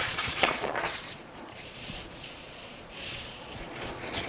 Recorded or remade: remade